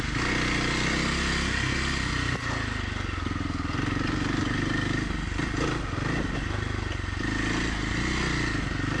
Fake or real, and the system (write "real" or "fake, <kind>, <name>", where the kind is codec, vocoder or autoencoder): real